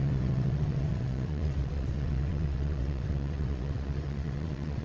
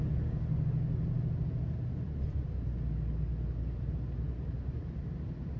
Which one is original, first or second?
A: second